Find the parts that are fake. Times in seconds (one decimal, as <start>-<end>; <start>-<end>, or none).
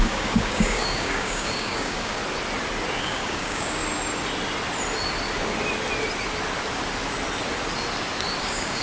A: 0.0-2.2; 3.0-3.8; 8.4-8.8